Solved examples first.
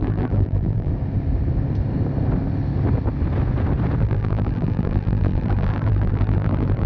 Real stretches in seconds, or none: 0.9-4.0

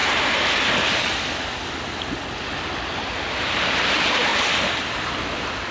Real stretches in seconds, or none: 0.0-3.4; 4.3-4.9

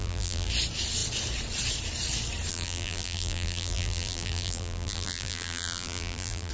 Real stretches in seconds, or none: 0.5-2.5

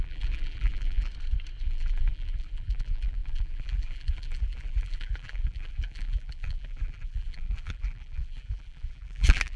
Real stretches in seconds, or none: 1.1-1.6

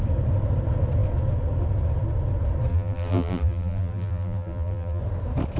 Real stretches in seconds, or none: 0.0-2.7; 5.0-5.6

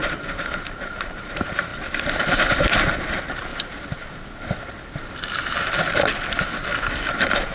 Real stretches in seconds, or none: 1.7-2.3; 3.5-7.0

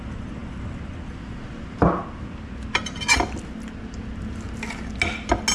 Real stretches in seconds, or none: 0.0-5.5

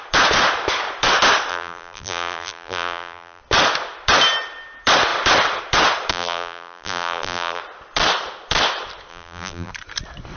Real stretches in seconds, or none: 0.0-1.5; 3.4-6.1; 7.6-9.1; 9.7-10.4